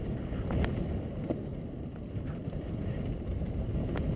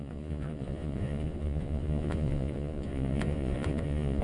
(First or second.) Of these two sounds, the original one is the first